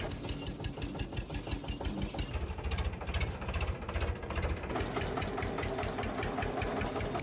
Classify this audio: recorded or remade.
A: recorded